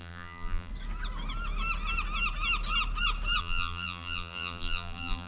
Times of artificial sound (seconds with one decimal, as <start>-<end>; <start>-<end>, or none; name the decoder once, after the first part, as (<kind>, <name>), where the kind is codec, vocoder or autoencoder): 0.0-0.7 (vocoder, BigVGAN v2); 3.4-5.3